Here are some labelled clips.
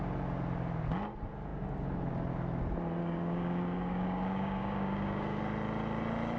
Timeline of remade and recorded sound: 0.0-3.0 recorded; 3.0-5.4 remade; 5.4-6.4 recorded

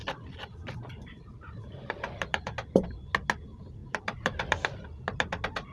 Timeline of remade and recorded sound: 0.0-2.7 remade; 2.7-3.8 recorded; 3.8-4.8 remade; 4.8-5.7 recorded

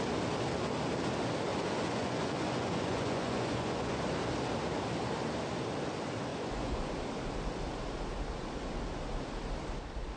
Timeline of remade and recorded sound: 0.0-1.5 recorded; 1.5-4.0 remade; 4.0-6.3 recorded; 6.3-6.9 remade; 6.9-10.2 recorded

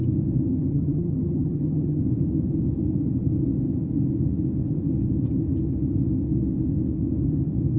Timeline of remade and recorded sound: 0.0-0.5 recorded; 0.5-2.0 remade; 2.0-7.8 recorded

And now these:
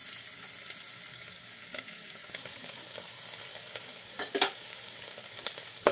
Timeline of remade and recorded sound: 0.0-1.1 recorded; 1.1-3.0 remade; 3.0-3.5 recorded; 3.5-5.9 remade

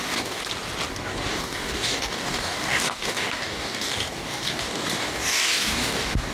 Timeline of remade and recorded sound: 0.0-0.4 remade; 0.4-0.9 recorded; 0.9-6.3 remade

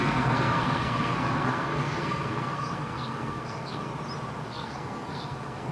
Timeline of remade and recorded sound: 0.0-3.9 remade; 3.9-4.4 recorded; 4.4-5.7 remade